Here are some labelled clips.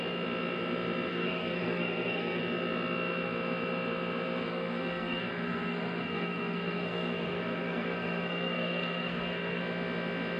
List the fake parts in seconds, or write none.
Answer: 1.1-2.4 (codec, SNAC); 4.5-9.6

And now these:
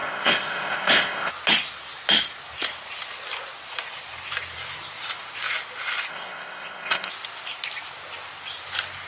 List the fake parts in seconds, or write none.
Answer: 0.0-1.3 (codec, ZipCodec); 6.1-7.1

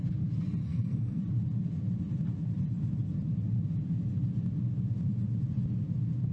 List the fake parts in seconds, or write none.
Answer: 0.6-1.2 (codec, SNAC)

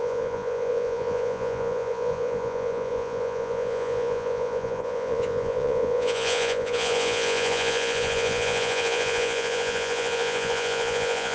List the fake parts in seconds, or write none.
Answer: 0.0-11.3 (vocoder, Vocos)

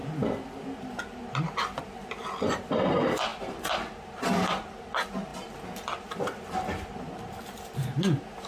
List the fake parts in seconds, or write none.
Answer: none

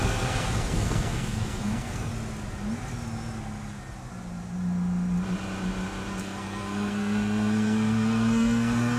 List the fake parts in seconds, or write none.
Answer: 0.0-2.1 (codec, SNAC); 6.2-9.0